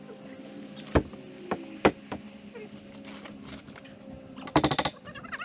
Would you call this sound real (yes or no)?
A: yes